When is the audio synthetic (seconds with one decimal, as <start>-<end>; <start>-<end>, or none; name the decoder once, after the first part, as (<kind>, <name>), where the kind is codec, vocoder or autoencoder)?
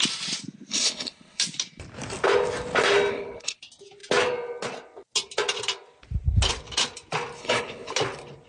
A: 0.7-1.4 (codec, HILCodec); 3.1-3.6; 7.4-7.9